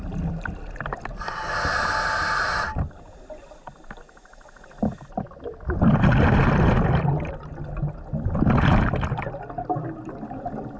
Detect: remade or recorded recorded